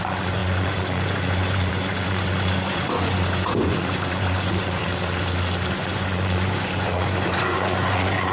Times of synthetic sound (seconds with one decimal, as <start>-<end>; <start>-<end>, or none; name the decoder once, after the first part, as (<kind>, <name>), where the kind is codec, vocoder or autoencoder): 0.0-4.8 (vocoder, Vocos); 5.7-8.3